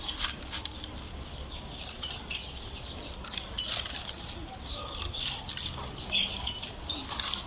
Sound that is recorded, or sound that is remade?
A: remade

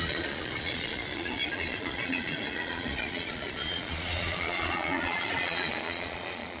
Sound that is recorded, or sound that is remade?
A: remade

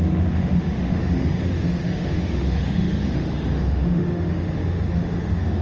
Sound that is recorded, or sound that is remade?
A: remade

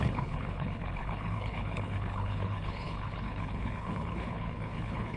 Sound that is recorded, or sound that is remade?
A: remade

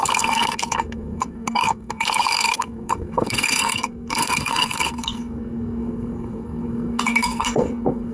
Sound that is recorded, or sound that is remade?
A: remade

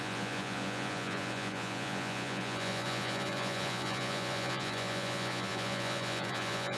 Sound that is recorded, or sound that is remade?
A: remade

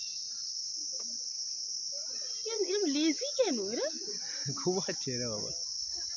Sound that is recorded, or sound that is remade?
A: recorded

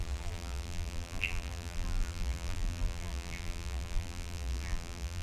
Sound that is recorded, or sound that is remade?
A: remade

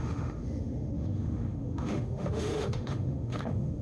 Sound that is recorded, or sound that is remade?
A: remade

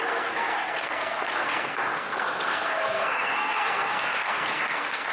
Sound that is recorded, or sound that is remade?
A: remade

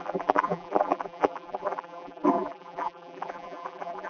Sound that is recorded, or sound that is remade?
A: remade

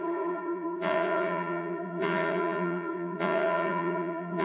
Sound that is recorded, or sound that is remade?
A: remade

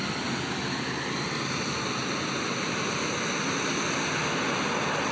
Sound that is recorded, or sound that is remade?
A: recorded